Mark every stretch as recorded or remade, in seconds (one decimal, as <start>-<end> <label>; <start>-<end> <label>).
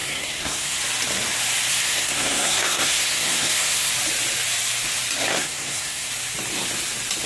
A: 0.0-0.8 remade; 0.8-1.7 recorded; 1.7-3.9 remade; 3.9-5.3 recorded; 5.3-6.1 remade; 6.1-7.3 recorded